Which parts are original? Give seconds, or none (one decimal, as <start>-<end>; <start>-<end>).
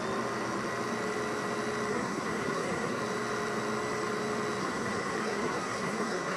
0.0-1.9; 3.0-4.6